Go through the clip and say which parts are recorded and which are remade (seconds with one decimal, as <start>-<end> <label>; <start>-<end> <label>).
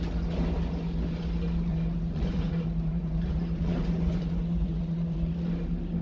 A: 0.0-1.7 recorded; 1.7-5.3 remade; 5.3-6.0 recorded